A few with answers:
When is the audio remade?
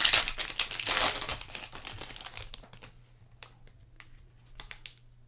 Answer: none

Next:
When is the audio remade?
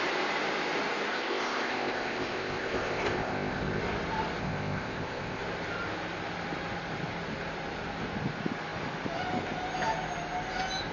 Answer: 1.1-3.8 (codec, ZipCodec); 4.4-5.4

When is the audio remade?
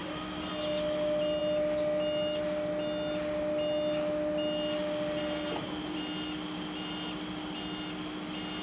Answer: none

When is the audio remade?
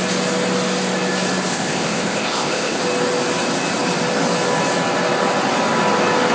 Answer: 1.5-2.8 (codec, ZipCodec)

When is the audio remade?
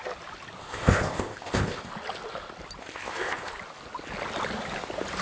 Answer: 0.6-1.9 (codec, ZipCodec); 2.8-3.5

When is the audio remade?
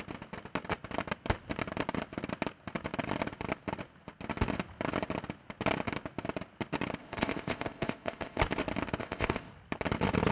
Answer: 7.0-8.4 (codec, ZipCodec); 9.0-9.5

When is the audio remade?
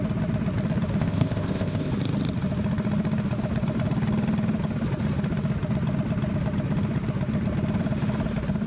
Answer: 1.0-1.9 (codec, ZipCodec)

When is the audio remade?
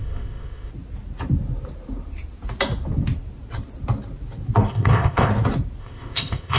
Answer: 0.0-0.7 (codec, ZipCodec); 4.7-5.3; 5.8-6.6